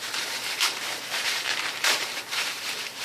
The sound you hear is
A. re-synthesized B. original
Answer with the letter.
A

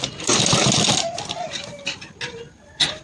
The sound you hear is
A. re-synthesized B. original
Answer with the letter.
A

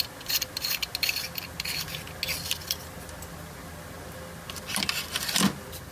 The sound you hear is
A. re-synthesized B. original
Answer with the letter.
B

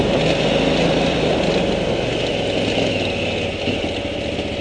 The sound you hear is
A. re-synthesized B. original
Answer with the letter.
B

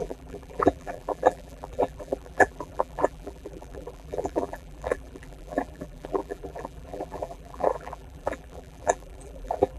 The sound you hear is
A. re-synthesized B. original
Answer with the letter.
A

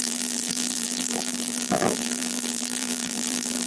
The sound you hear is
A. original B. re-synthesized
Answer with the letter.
B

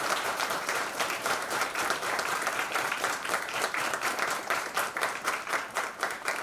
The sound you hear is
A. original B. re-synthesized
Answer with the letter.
B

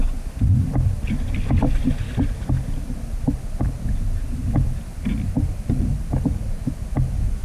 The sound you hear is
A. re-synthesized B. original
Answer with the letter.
B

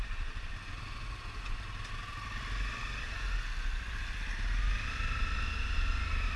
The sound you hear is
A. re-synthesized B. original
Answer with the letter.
B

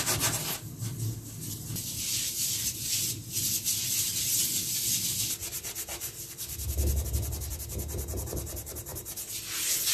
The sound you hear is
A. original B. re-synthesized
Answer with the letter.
A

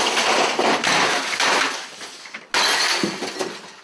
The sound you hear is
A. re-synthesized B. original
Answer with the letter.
B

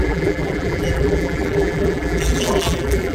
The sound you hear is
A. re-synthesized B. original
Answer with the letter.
A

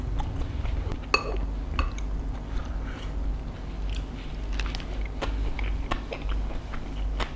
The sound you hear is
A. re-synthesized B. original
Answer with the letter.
B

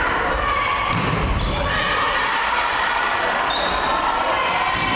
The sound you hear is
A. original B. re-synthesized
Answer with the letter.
B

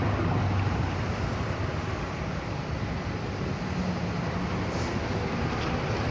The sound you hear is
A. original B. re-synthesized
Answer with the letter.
A